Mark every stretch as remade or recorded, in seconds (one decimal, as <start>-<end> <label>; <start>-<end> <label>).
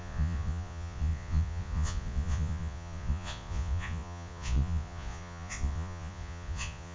0.0-6.9 remade